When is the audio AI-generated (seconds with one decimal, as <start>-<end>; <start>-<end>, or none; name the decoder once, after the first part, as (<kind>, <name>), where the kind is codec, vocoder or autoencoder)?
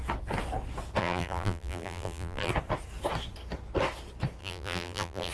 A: 1.0-2.5 (vocoder, BigVGAN v2); 4.4-5.3